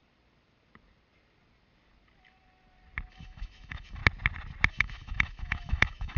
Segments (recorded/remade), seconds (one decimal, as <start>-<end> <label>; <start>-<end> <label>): 0.0-3.1 recorded; 3.1-4.0 remade; 4.0-4.7 recorded; 4.7-6.2 remade